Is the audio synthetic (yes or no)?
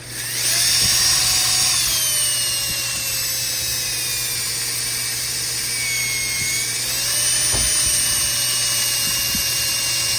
no